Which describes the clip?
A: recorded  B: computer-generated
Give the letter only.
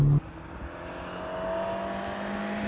A